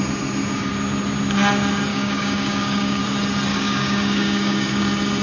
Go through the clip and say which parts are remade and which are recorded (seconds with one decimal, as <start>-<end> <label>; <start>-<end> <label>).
0.0-1.9 recorded; 1.9-3.0 remade; 3.0-3.5 recorded; 3.5-4.8 remade; 4.8-5.2 recorded